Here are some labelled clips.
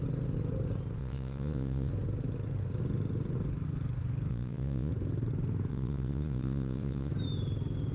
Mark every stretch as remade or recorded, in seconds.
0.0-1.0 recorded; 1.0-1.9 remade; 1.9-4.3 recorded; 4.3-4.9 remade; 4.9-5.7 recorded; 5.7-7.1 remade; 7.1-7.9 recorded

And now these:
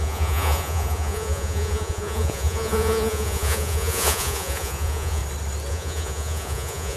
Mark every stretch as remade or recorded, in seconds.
0.0-5.2 remade; 5.2-5.7 recorded; 5.7-7.0 remade

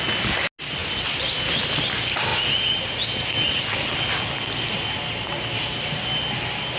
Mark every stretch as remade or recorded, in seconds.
0.0-6.8 recorded

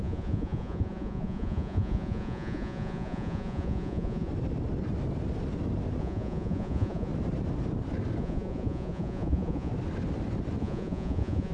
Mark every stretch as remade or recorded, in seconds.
0.0-4.3 remade; 4.3-6.0 recorded; 6.0-7.1 remade; 7.1-8.2 recorded; 8.2-9.7 remade; 9.7-10.6 recorded; 10.6-11.5 remade

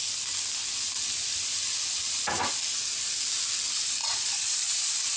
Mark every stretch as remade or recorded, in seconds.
0.0-4.0 recorded; 4.0-4.8 remade; 4.8-5.2 recorded

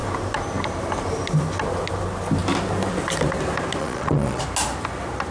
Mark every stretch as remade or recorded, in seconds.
0.0-3.8 recorded; 3.8-4.4 remade; 4.4-5.3 recorded